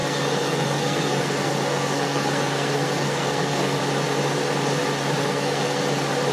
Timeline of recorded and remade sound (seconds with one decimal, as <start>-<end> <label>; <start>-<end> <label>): 0.0-3.8 remade; 3.8-5.2 recorded; 5.2-5.8 remade; 5.8-6.3 recorded